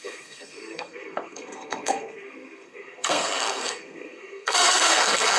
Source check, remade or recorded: remade